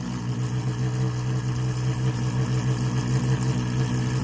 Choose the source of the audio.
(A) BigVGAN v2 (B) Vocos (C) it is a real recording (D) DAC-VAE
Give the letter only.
C